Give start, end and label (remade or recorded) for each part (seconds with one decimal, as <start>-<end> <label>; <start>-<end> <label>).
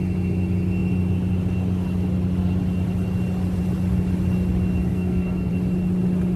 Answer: 0.0-4.9 recorded; 4.9-5.5 remade; 5.5-6.4 recorded